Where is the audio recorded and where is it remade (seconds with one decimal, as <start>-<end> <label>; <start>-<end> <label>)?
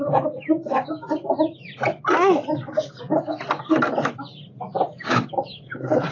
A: 0.0-1.2 remade; 1.2-4.9 recorded; 4.9-6.1 remade